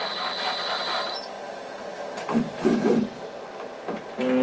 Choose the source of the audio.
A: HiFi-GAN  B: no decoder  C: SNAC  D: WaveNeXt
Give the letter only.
B